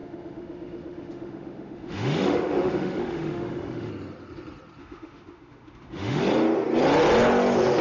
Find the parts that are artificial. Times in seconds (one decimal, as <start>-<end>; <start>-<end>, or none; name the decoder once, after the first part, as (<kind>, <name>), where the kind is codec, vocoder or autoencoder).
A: 0.0-3.9 (autoencoder, DAC-VAE); 4.8-6.2